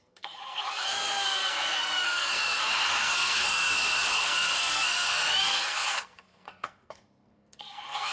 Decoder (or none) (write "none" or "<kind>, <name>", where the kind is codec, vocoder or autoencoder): codec, SNAC